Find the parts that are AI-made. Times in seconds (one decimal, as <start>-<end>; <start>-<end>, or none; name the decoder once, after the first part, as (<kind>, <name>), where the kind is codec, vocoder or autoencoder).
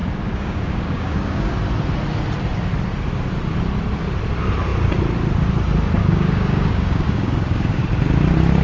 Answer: 0.0-1.5 (codec, DAC); 6.0-7.8